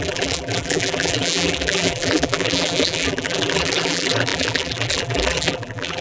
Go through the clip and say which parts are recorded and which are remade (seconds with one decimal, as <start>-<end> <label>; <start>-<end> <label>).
0.0-6.0 remade